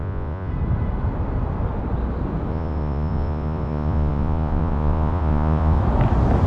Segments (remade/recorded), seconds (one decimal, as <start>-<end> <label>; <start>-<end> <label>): 0.0-0.5 remade; 0.5-2.5 recorded; 2.5-5.8 remade; 5.8-6.5 recorded